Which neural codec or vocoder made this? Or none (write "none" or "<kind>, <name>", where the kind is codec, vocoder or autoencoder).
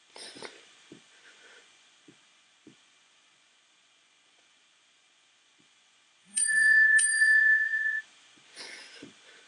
vocoder, Vocos